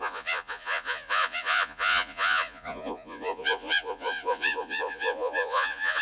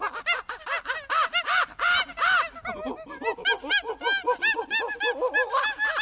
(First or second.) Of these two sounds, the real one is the second